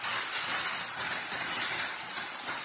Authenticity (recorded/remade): recorded